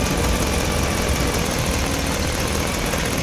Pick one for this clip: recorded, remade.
recorded